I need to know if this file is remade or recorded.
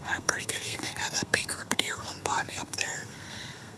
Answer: remade